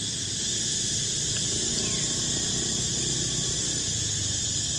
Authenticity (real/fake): real